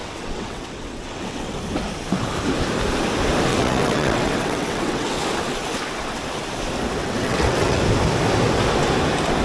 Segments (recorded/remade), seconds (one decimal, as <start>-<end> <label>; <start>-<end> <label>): 0.0-1.6 remade; 1.6-3.5 recorded; 3.5-5.2 remade; 5.2-7.0 recorded; 7.0-7.8 remade; 7.8-9.4 recorded